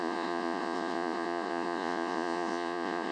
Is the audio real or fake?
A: fake